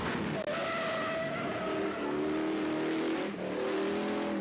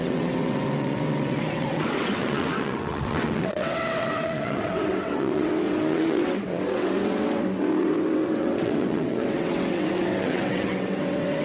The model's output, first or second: second